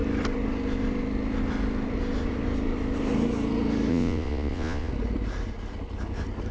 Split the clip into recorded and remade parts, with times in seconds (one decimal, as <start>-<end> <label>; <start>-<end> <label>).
0.0-3.9 recorded; 3.9-4.9 remade; 4.9-6.5 recorded